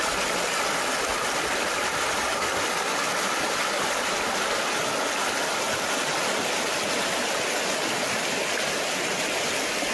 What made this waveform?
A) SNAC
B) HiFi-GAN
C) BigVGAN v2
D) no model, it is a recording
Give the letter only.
D